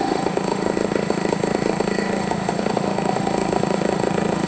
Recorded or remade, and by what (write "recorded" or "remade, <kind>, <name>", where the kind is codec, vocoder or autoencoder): remade, autoencoder, DAC-VAE